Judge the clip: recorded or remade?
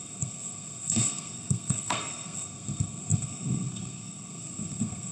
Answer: remade